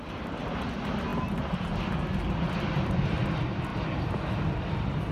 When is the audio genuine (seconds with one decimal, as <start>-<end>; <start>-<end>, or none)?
0.0-5.1